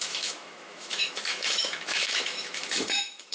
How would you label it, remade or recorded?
remade